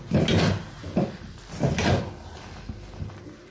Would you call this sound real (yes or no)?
yes